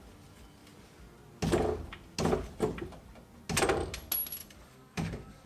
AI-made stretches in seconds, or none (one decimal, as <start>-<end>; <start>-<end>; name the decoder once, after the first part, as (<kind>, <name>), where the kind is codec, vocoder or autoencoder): 4.4-5.5 (codec, DAC)